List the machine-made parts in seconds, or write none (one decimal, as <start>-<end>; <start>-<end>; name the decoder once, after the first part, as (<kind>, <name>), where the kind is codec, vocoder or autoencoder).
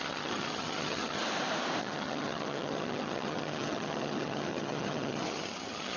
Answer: 0.0-1.2 (vocoder, HiFi-GAN); 1.8-6.0